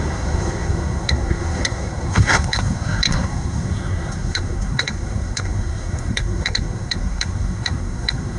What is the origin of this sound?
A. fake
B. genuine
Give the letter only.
A